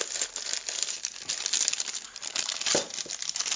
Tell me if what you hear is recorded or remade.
recorded